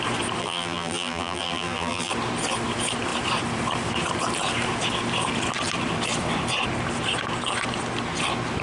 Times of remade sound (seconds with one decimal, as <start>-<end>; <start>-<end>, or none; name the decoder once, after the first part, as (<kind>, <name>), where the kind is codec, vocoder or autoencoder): 0.4-2.1 (vocoder, BigVGAN v2)